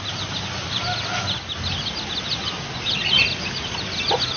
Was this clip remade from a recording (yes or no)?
no